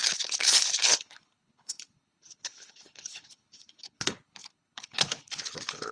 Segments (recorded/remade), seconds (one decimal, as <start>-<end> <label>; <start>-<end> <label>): 0.0-5.9 remade